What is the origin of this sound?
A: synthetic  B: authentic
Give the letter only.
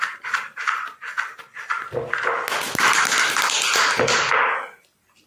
B